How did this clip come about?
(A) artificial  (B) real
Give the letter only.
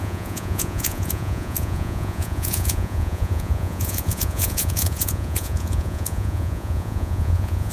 A